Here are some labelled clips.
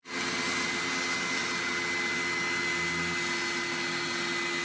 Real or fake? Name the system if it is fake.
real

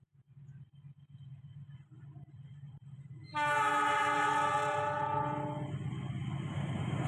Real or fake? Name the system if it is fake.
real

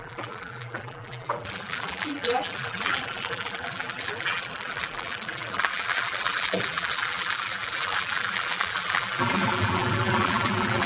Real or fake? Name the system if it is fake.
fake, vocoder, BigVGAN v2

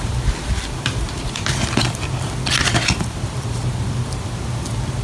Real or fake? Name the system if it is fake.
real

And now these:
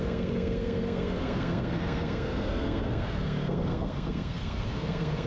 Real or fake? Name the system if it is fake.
fake, codec, SNAC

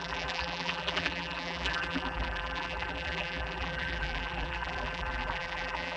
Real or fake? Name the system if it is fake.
fake, vocoder, BigVGAN v2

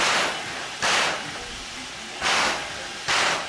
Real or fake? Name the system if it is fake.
real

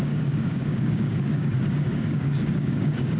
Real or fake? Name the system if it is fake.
fake, codec, DAC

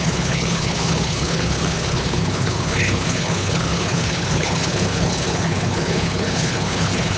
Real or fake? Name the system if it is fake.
fake, codec, HILCodec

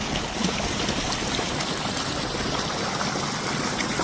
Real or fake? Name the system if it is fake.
real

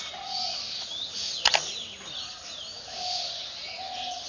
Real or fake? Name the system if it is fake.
real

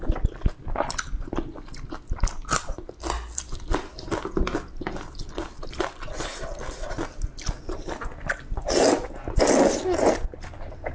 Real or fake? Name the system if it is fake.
real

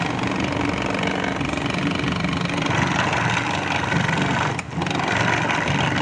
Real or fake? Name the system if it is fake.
fake, vocoder, BigVGAN v2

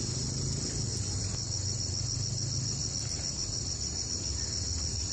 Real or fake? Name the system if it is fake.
real